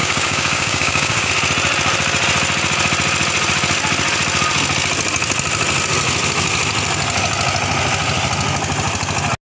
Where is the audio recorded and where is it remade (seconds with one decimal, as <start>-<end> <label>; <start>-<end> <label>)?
0.0-1.3 remade; 1.3-9.5 recorded

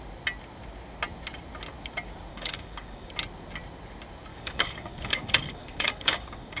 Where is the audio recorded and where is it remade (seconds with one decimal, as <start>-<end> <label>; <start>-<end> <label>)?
0.0-2.3 recorded; 2.3-3.1 remade; 3.1-4.3 recorded; 4.3-6.6 remade

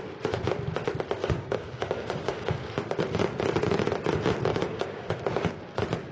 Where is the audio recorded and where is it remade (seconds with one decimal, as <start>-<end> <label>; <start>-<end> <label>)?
0.0-1.2 recorded; 1.2-3.0 remade; 3.0-4.5 recorded; 4.5-5.1 remade; 5.1-6.1 recorded